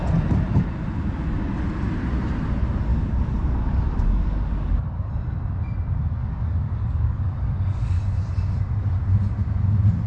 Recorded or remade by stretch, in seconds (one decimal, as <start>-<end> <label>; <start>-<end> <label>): 0.0-2.9 recorded; 2.9-5.1 remade; 5.1-6.2 recorded; 6.2-8.0 remade; 8.0-10.1 recorded